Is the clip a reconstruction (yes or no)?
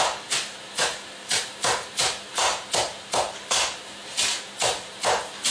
no